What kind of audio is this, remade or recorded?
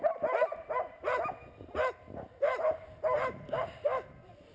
recorded